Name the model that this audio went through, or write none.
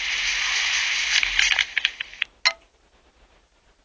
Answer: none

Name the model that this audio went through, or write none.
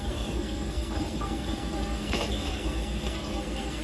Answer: codec, SNAC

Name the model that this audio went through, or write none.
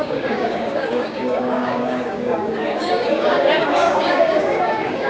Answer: codec, DAC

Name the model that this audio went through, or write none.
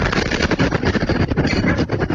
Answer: none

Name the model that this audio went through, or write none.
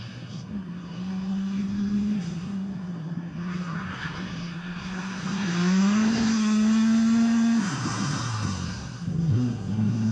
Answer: codec, SNAC